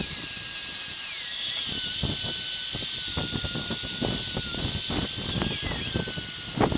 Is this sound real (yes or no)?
yes